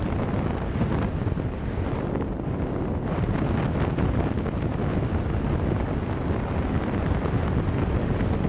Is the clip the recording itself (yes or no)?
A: yes